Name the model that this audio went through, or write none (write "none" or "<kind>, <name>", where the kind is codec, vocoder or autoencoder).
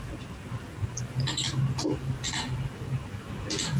none